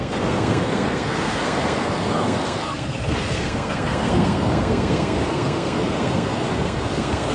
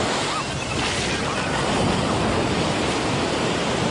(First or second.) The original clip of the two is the second